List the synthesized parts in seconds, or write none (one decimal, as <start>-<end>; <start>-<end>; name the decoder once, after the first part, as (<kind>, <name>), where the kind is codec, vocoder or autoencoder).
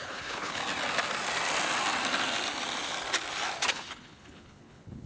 0.0-0.6 (codec, HILCodec); 3.7-5.1